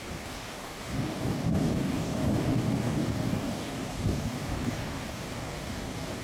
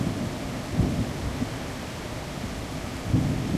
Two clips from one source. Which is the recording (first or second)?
second